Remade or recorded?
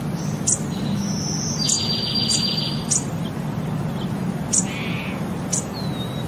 recorded